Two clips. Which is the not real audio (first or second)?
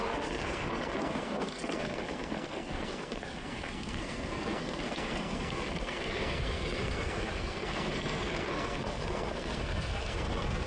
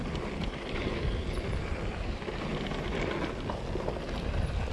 first